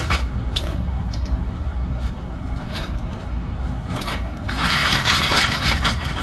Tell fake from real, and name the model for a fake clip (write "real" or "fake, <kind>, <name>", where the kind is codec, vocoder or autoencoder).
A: fake, codec, SNAC